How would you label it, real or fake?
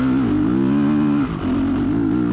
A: real